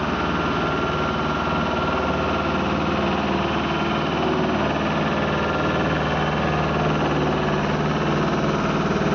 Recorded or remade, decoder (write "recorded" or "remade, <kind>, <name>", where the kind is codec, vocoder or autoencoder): recorded